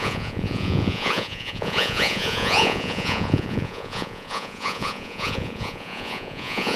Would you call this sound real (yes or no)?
no